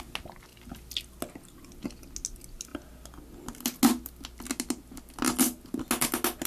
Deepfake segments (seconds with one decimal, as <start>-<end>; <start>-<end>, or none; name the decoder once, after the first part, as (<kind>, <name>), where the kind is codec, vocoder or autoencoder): none